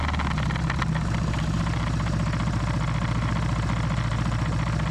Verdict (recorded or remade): recorded